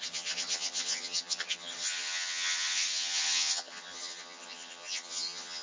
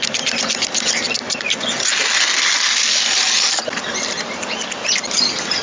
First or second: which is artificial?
first